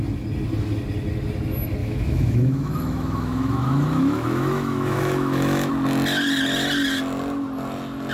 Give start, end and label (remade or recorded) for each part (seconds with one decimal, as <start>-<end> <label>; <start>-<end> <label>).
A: 0.0-1.8 recorded; 1.8-5.7 remade; 5.7-8.1 recorded